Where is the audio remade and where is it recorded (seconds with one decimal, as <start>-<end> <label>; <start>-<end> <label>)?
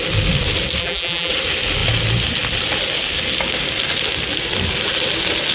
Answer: 0.0-0.8 recorded; 0.8-1.3 remade; 1.3-5.5 recorded